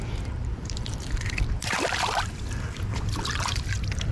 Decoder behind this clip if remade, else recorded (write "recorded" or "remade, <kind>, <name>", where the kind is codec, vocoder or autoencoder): remade, vocoder, BigVGAN v2